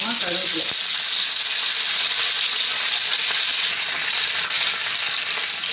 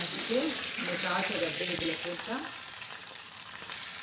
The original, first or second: first